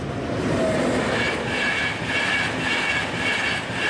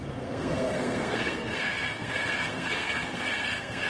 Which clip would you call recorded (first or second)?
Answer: first